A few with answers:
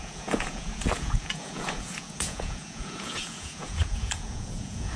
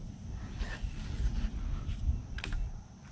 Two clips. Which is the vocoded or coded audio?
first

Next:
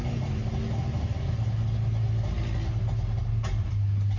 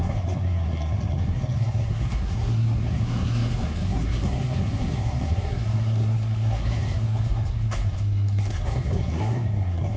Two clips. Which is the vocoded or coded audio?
second